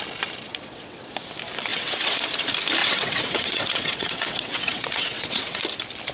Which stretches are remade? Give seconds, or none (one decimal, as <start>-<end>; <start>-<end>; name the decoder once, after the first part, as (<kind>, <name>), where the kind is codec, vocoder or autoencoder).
0.5-1.1 (vocoder, WaveNeXt); 1.7-2.3; 2.8-5.6